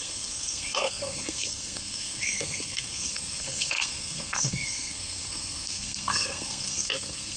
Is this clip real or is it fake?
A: fake